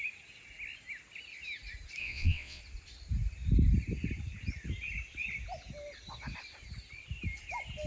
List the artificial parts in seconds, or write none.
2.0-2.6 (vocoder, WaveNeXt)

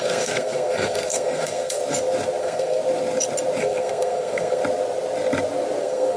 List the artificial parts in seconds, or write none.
0.0-1.8 (codec, SNAC); 2.4-2.8; 3.6-4.6; 5.8-6.2

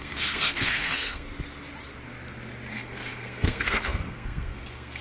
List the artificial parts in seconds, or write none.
0.0-1.3 (codec, SNAC); 2.7-5.0